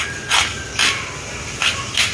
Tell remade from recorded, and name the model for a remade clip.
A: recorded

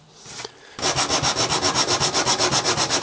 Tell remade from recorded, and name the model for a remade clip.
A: recorded